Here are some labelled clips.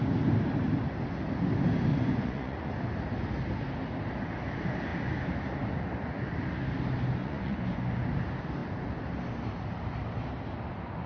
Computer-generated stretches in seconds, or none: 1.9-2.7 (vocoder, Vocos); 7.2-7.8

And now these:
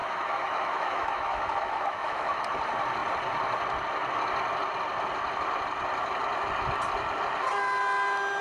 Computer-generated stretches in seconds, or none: 0.0-2.4 (autoencoder, DAC-VAE)

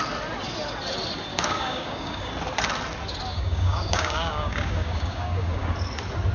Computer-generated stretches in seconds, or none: 1.3-2.3 (codec, DAC); 3.3-5.7

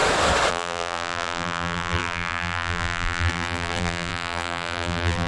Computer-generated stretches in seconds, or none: 0.5-5.3 (vocoder, BigVGAN v2)

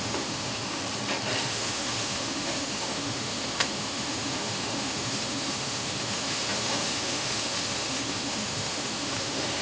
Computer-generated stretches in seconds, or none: 0.0-0.8 (autoencoder, DAC-VAE); 1.4-9.6